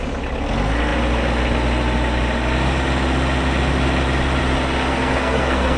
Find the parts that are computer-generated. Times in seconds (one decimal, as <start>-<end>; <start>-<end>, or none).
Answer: 4.9-5.8